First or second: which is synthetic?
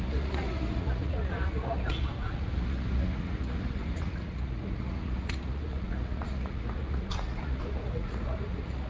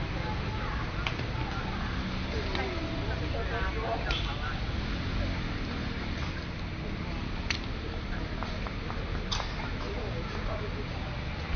first